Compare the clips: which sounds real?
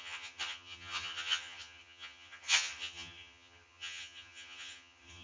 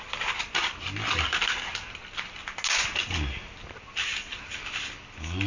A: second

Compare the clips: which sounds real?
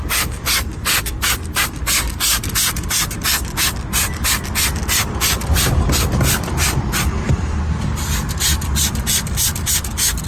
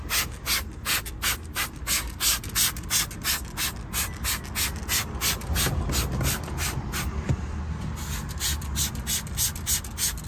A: second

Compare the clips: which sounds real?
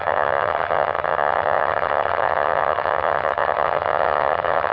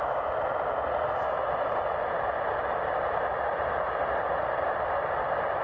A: second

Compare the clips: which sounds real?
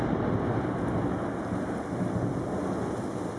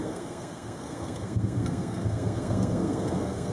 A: first